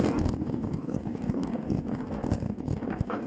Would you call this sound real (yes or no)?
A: no